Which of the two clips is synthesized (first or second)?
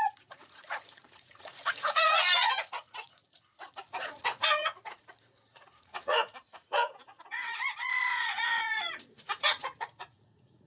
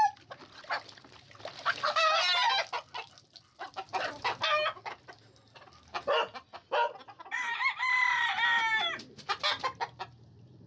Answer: first